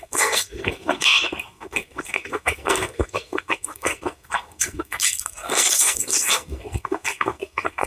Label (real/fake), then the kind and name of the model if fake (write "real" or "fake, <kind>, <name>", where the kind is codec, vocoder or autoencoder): fake, codec, SNAC